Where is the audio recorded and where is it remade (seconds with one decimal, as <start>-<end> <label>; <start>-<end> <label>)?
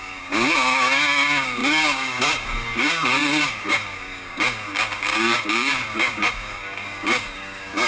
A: 0.0-7.9 remade